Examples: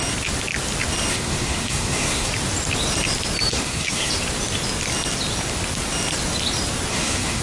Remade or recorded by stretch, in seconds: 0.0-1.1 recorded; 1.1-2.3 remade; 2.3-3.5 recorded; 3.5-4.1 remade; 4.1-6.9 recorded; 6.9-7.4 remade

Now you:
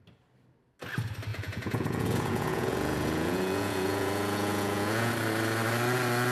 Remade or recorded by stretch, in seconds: 0.0-1.3 recorded; 1.3-5.1 remade; 5.1-6.3 recorded

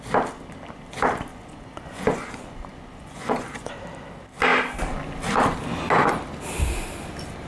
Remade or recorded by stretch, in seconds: 0.0-1.3 recorded; 1.3-3.7 remade; 3.7-7.5 recorded

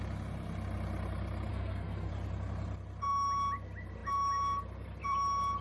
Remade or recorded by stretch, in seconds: 0.0-1.5 recorded; 1.5-2.1 remade; 2.1-5.6 recorded